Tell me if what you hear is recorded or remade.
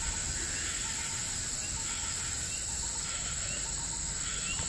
recorded